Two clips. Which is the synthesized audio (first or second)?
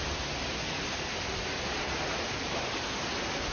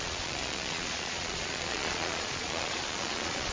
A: second